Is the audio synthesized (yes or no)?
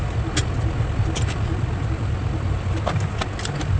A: no